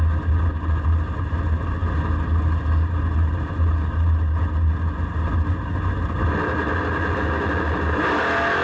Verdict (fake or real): real